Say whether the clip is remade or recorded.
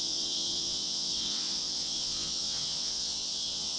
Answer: remade